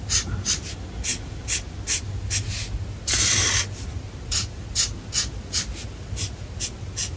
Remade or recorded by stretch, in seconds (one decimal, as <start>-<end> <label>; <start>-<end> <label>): 0.0-7.2 recorded